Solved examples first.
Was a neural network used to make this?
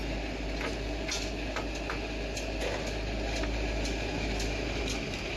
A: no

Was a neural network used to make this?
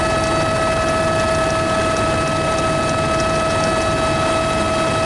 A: no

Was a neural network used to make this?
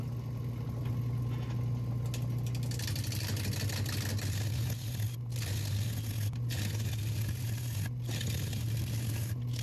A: no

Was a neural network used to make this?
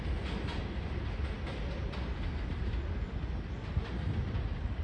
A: no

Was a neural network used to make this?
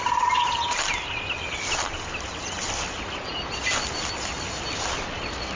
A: no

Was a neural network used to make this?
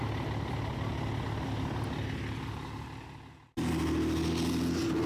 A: no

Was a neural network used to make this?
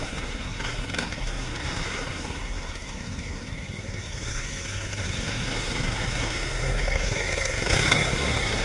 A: yes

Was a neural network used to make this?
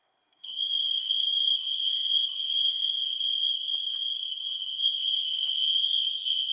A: yes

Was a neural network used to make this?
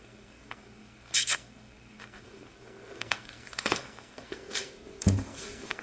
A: yes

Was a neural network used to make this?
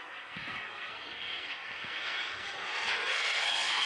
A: yes